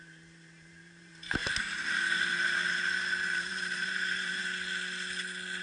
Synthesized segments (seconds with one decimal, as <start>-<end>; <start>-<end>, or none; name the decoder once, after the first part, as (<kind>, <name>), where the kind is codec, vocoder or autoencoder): 0.0-1.4 (vocoder, BigVGAN v2); 3.3-4.4